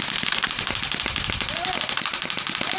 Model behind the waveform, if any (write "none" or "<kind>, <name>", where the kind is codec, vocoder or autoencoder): none